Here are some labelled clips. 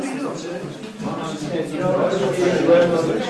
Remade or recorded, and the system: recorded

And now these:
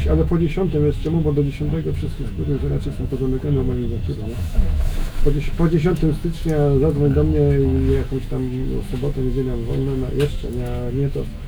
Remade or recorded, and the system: remade, autoencoder, DAC-VAE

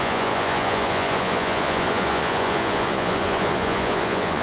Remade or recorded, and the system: remade, vocoder, Vocos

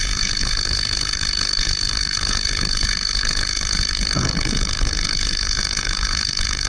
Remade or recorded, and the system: remade, codec, HILCodec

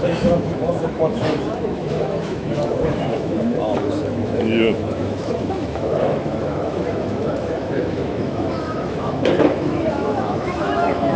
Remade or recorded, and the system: remade, autoencoder, DAC-VAE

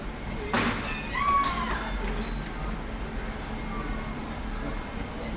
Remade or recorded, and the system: recorded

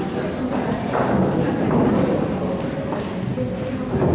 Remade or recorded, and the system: recorded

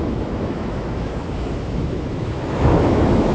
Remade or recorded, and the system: remade, autoencoder, DAC-VAE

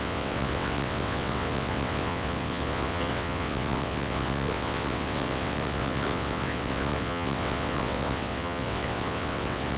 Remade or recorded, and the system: remade, vocoder, WaveNeXt